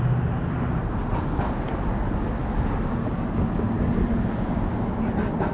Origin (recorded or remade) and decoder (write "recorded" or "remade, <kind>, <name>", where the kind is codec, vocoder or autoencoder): recorded